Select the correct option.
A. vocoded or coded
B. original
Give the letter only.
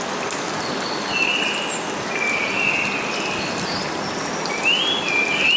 B